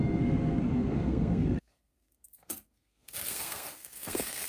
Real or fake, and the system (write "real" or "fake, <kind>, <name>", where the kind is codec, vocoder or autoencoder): fake, codec, SNAC